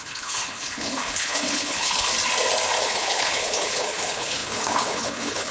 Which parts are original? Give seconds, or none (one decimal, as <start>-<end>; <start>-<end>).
2.1-2.8